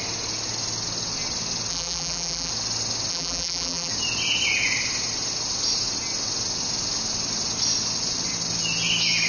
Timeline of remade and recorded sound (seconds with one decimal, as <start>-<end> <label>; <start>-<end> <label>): 0.0-1.7 recorded; 1.7-2.5 remade; 2.5-3.1 recorded; 3.1-3.9 remade; 3.9-9.3 recorded